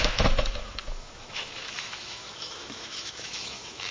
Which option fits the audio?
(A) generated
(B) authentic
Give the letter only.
A